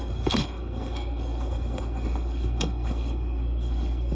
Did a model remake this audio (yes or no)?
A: yes